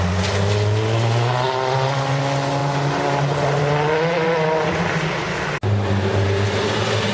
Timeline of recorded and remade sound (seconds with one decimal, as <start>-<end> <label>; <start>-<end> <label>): 0.0-7.1 recorded